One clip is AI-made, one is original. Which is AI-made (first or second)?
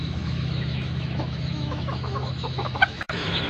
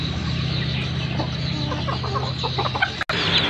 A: first